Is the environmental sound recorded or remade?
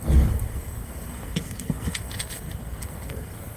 remade